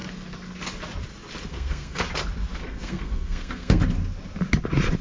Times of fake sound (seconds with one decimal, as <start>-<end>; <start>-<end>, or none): 1.5-2.0; 2.6-3.8